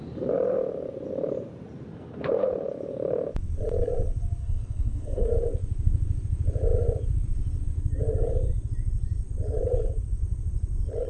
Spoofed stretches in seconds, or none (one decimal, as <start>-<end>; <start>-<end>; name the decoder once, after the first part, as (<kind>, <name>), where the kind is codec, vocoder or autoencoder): 1.9-2.5 (codec, SNAC); 4.4-5.3